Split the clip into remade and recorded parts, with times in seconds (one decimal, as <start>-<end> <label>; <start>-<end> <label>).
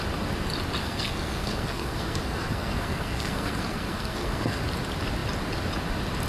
0.0-0.8 recorded; 0.8-4.6 remade; 4.6-6.3 recorded